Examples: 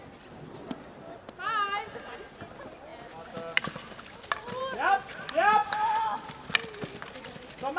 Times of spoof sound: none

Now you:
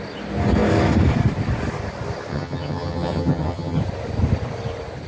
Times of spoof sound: 2.3-3.8 (vocoder, HiFi-GAN)

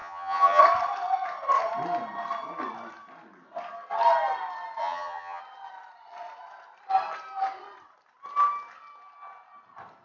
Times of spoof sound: 0.0-0.6 (vocoder, HiFi-GAN); 4.8-5.4

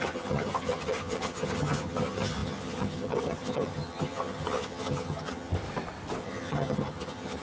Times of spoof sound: 0.0-5.5 (vocoder, HiFi-GAN); 6.2-7.4

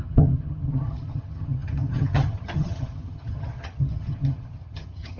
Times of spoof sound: 0.0-5.2 (vocoder, HiFi-GAN)